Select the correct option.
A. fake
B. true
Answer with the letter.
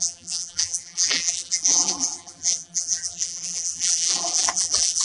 A